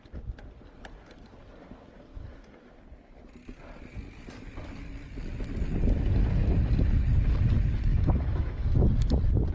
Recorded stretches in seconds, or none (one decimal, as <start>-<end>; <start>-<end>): 0.0-7.9; 8.7-9.5